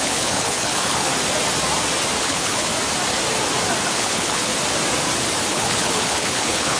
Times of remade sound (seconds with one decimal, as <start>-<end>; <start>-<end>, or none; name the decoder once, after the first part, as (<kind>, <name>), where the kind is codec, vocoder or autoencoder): 0.0-1.1 (codec, HILCodec); 2.2-2.7; 3.9-4.5; 5.5-6.8